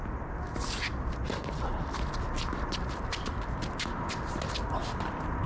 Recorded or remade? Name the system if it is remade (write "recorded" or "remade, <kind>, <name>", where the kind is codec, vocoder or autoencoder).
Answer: recorded